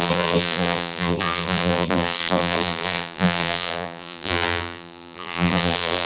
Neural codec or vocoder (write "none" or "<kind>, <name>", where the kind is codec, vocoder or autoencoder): vocoder, BigVGAN v2